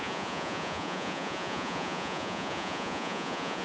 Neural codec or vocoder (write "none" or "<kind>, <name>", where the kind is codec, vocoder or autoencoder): vocoder, Vocos